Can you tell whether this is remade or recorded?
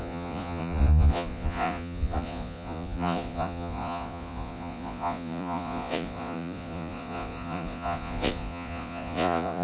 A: remade